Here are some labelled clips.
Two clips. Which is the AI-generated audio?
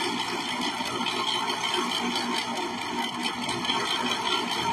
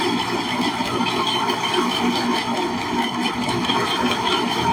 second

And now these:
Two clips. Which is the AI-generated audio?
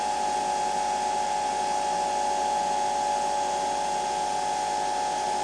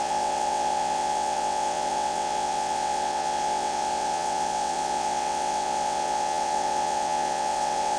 second